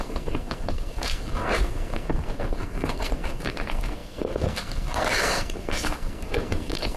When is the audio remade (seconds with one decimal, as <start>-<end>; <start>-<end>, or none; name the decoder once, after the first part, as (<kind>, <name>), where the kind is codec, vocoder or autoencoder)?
0.0-7.0 (codec, SNAC)